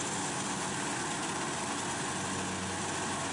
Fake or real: real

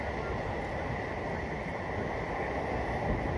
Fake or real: real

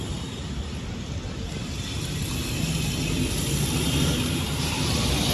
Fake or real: fake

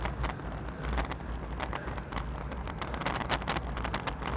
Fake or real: real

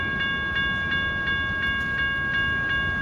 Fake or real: real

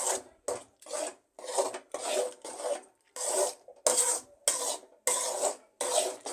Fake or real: real